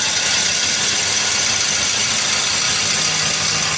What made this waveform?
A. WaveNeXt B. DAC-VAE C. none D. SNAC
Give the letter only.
C